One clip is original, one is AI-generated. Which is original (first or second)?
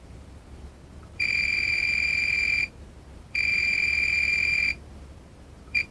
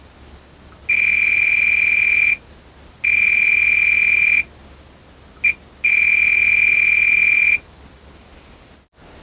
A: second